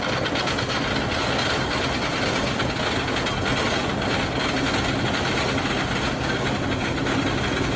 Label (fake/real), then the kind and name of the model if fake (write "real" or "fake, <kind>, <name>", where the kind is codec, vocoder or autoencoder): real